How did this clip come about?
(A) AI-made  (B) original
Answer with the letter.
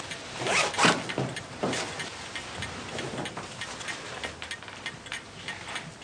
B